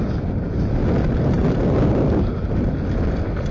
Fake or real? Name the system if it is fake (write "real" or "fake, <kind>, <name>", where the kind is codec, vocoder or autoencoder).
real